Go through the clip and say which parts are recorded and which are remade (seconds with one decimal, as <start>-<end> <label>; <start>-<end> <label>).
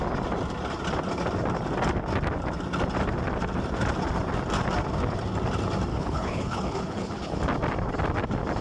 0.0-5.9 recorded; 5.9-7.4 remade; 7.4-8.6 recorded